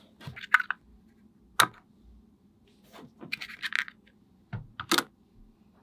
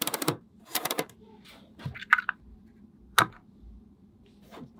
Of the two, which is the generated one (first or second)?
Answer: second